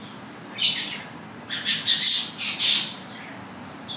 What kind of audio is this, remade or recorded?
recorded